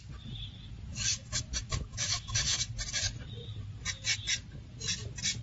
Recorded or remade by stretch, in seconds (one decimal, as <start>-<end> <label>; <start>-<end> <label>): 0.0-0.9 recorded; 0.9-1.4 remade; 1.4-1.9 recorded; 1.9-2.7 remade; 2.7-5.4 recorded